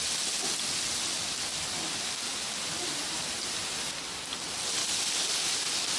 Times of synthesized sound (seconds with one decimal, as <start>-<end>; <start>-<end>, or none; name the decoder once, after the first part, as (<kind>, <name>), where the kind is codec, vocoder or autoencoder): none